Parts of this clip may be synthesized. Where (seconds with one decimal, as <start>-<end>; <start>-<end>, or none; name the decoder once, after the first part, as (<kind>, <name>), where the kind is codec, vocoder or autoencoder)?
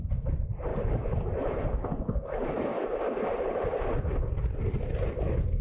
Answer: 0.7-1.5 (vocoder, BigVGAN v2); 2.7-5.1